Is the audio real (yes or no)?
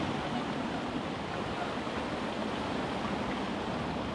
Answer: no